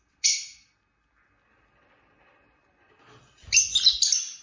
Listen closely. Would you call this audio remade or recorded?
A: recorded